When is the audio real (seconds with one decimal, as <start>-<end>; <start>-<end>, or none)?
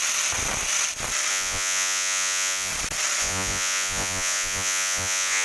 0.0-1.3; 2.7-3.2